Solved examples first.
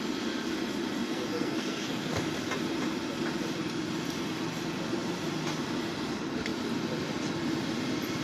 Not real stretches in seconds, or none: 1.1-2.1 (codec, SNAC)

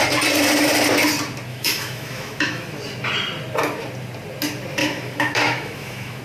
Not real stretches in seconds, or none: 1.5-2.8 (autoencoder, DAC-VAE); 4.8-6.2

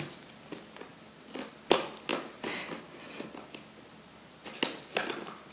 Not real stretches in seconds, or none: none